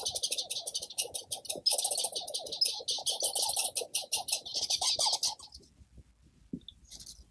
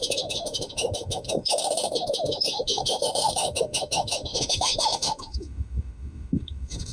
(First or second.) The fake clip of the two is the second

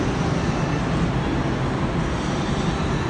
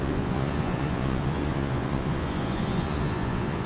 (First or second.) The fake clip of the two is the second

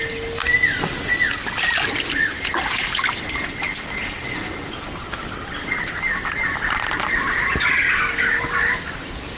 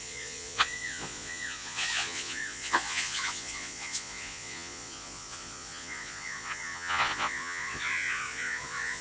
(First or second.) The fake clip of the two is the second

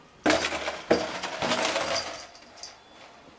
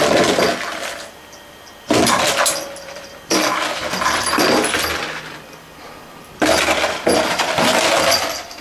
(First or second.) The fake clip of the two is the second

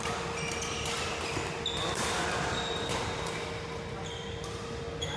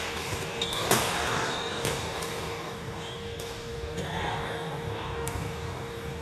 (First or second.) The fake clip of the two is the second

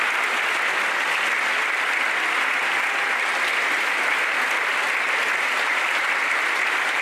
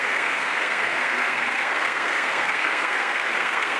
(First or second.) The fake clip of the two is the second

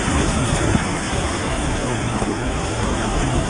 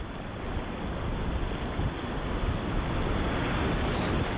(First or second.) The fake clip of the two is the first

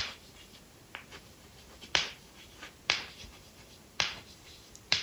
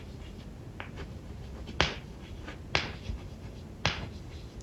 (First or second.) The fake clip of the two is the first